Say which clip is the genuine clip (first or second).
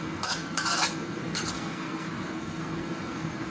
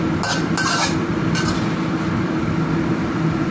second